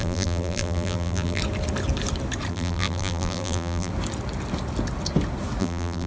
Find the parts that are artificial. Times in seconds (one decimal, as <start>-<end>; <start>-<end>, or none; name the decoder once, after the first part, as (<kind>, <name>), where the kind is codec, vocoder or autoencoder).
0.0-1.4 (vocoder, BigVGAN v2); 2.5-3.9; 5.6-6.1